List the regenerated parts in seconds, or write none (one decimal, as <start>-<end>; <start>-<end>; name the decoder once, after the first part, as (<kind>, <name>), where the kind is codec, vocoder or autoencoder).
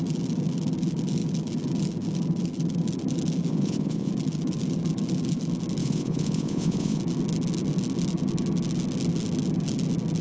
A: 3.5-4.1 (vocoder, Vocos); 5.8-7.0